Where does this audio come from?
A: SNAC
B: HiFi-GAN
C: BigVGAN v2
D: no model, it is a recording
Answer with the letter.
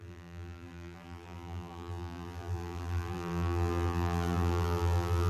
C